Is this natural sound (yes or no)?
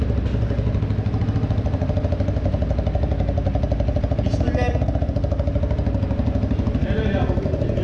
yes